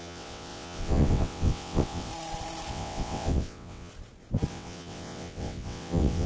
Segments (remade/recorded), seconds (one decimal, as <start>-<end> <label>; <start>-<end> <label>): 0.0-2.1 remade; 2.1-2.7 recorded; 2.7-3.9 remade; 3.9-4.5 recorded; 4.5-6.3 remade